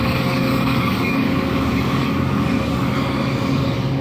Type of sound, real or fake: fake